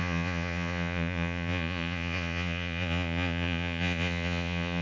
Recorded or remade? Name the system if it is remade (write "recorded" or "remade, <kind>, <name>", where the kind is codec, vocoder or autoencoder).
remade, vocoder, Vocos